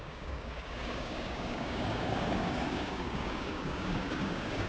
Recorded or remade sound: remade